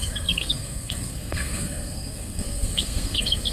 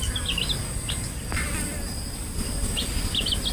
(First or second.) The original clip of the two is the second